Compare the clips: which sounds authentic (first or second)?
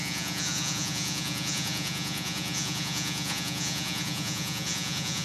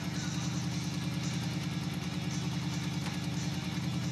second